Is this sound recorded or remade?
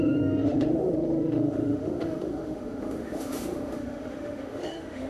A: remade